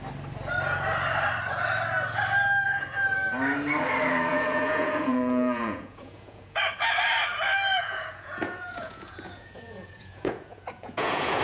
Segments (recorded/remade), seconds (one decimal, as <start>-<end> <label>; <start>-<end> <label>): 0.0-4.3 recorded; 4.3-6.6 remade; 6.6-7.7 recorded; 7.7-11.4 remade